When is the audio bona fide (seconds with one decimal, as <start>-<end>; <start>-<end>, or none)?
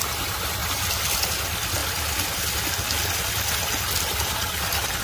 0.0-5.0